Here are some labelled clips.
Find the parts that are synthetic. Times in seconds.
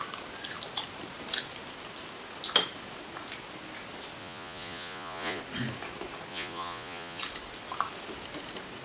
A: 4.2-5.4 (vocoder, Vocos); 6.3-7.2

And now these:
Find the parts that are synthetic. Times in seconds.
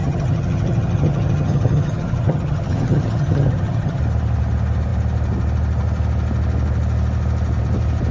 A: 0.0-4.0 (vocoder, HiFi-GAN)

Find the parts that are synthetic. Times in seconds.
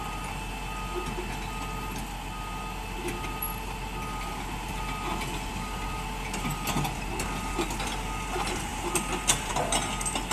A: none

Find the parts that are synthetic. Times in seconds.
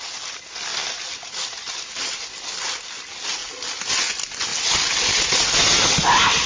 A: none